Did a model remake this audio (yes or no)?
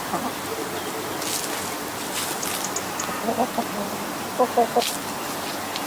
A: no